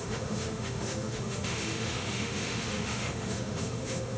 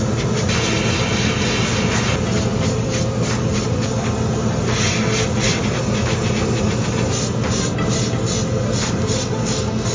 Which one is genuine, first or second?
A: second